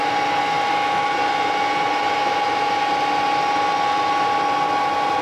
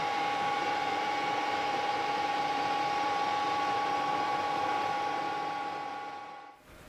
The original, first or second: first